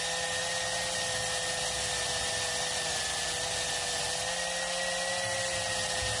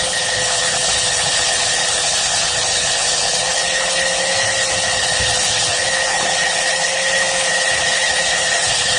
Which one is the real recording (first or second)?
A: first